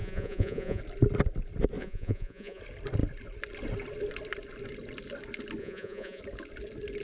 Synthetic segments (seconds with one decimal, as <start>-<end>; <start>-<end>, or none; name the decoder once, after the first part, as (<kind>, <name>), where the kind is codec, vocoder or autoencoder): 0.0-0.8 (vocoder, Vocos); 1.8-2.6; 5.6-6.2